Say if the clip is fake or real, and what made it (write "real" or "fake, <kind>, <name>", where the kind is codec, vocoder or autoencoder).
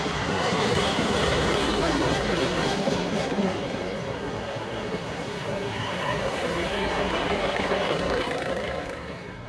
fake, codec, SNAC